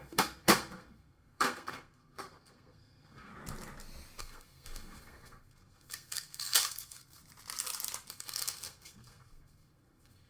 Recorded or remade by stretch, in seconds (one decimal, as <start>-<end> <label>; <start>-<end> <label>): 0.0-3.3 remade; 3.3-4.2 recorded; 4.2-7.2 remade; 7.2-8.1 recorded; 8.1-10.3 remade